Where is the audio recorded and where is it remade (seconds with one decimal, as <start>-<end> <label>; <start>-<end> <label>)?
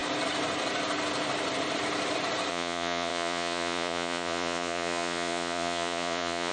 0.0-2.5 recorded; 2.5-6.5 remade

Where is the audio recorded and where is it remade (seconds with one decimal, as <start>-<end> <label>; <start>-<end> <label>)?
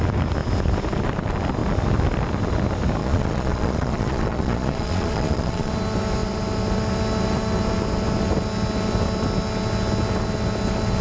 0.0-3.0 recorded; 3.0-5.7 remade; 5.7-11.0 recorded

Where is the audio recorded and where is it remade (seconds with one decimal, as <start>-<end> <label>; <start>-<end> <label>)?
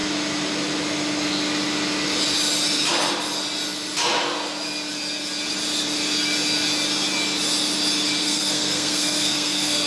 0.0-8.2 recorded; 8.2-9.9 remade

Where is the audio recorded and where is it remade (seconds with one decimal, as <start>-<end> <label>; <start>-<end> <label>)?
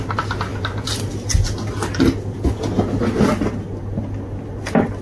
0.0-5.0 recorded